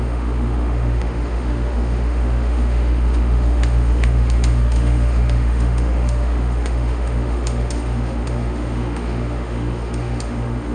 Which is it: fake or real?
fake